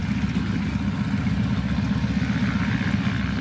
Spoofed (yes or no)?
no